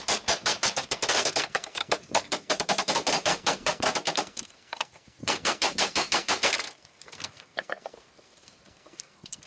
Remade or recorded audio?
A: remade